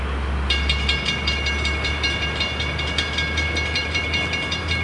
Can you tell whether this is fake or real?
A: real